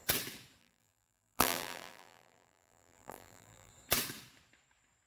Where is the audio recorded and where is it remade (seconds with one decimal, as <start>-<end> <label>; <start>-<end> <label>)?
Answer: 0.0-0.6 recorded; 0.6-3.7 remade; 3.7-5.1 recorded